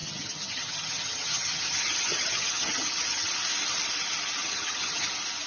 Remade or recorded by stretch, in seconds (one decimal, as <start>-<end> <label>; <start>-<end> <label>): 0.0-3.3 remade; 3.3-4.4 recorded; 4.4-5.1 remade; 5.1-5.5 recorded